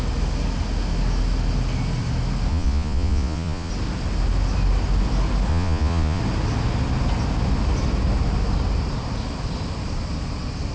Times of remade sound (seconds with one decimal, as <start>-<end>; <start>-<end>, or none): 2.5-3.7; 5.5-6.2